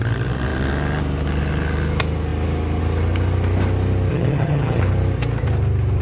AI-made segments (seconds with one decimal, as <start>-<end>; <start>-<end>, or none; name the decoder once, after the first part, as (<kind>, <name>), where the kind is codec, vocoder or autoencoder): 4.1-4.8 (vocoder, HiFi-GAN)